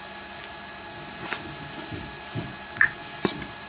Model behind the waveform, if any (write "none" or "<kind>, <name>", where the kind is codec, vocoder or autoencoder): none